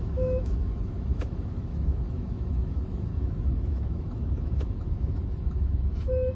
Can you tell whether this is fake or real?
fake